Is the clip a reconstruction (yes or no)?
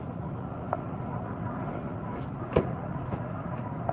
yes